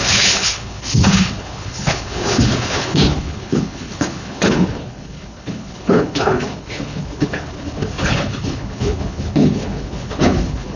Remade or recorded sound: remade